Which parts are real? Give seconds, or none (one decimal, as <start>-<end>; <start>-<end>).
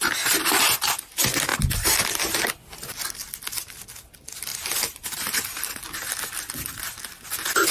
0.0-1.5; 2.1-3.2; 3.8-4.5; 5.9-7.7